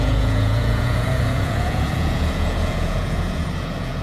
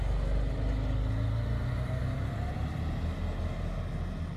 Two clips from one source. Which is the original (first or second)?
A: second